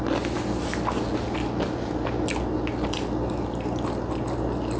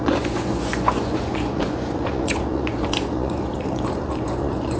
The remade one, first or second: second